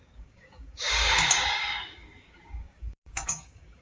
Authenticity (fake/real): fake